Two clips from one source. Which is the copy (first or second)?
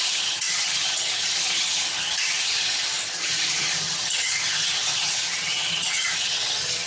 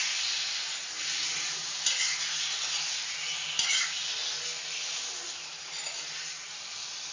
first